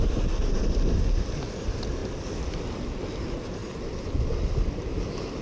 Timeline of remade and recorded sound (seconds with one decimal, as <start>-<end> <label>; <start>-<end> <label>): 0.0-3.6 recorded; 3.6-4.4 remade; 4.4-5.4 recorded